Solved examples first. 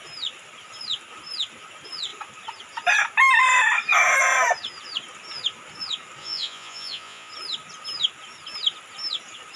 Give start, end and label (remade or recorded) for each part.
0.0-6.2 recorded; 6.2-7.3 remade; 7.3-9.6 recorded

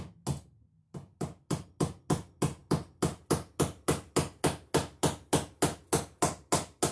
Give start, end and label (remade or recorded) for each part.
0.0-6.9 recorded

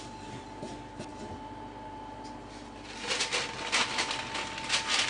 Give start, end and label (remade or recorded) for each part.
0.0-5.1 recorded

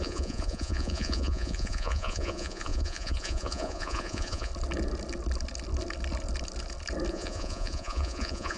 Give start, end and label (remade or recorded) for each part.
0.0-4.5 remade; 4.5-7.1 recorded; 7.1-8.6 remade

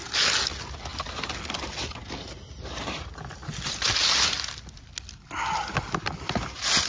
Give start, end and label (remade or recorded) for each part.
0.0-6.9 recorded

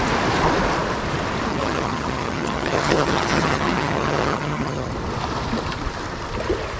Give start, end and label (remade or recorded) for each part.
0.0-1.5 recorded; 1.5-4.9 remade; 4.9-6.8 recorded

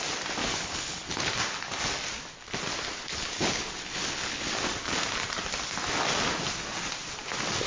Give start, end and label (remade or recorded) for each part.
0.0-0.4 recorded; 0.4-1.3 remade; 1.3-3.0 recorded; 3.0-4.4 remade; 4.4-7.7 recorded

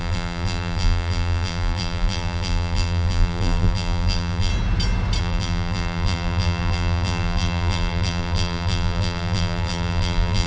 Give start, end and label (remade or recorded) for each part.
0.0-4.5 remade; 4.5-5.2 recorded; 5.2-10.5 remade